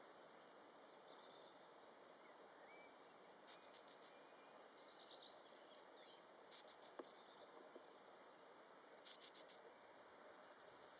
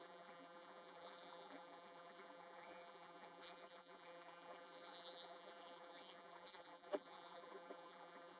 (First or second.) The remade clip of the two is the second